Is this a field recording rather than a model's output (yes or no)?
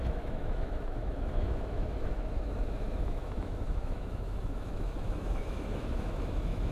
no